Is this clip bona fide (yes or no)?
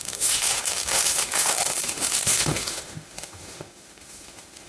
no